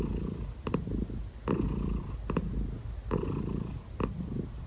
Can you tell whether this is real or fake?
real